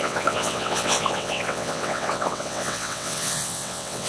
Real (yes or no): no